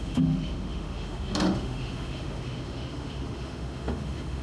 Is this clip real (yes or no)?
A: no